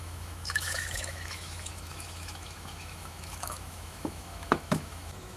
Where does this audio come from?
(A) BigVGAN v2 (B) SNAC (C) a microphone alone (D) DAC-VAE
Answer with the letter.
D